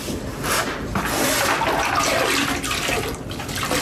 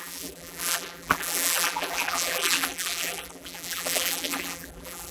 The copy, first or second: second